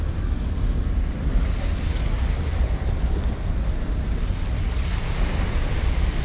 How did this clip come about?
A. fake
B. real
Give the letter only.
B